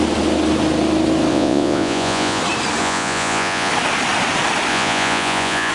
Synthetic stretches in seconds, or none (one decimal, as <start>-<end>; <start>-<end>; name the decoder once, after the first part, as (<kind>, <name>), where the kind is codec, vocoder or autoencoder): 1.3-2.4 (vocoder, Vocos); 2.8-3.7; 4.7-5.7

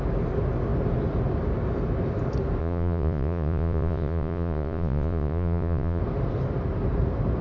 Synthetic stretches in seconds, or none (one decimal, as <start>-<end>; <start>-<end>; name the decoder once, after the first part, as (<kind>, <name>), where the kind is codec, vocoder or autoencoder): 2.6-6.0 (vocoder, Vocos)

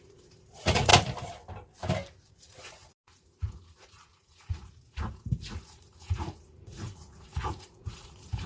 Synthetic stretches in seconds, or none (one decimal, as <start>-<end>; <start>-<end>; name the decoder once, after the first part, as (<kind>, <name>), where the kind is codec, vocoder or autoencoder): 0.0-0.9 (vocoder, Vocos); 2.3-8.5